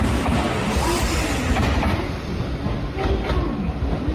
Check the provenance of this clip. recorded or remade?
recorded